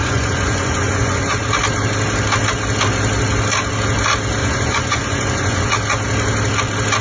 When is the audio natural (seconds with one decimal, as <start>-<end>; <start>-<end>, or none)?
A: 1.5-4.4; 5.7-7.0